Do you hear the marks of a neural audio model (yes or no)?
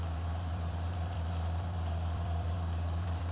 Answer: yes